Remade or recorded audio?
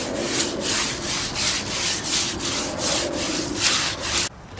recorded